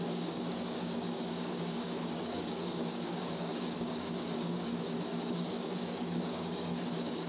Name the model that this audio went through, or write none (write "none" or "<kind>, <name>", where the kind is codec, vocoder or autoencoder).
codec, DAC